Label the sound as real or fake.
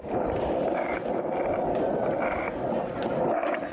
real